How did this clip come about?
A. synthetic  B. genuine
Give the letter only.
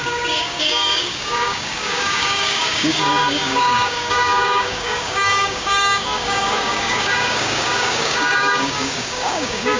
A